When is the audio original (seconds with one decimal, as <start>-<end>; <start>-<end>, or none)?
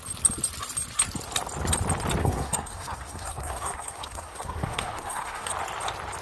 0.0-2.2; 5.5-6.2